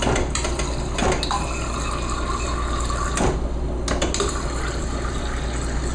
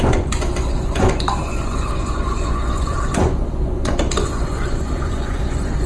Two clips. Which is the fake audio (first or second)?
second